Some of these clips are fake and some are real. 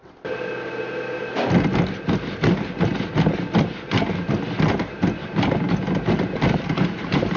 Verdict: real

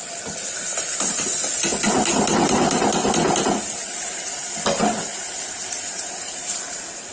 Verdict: real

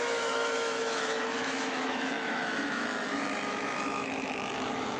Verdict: fake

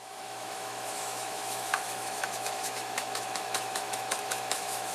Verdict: fake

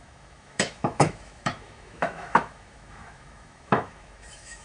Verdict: fake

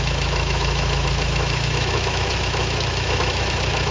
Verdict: fake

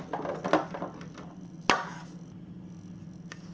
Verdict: real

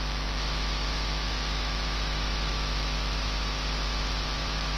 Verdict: fake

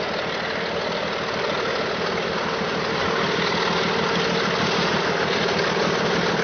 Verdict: real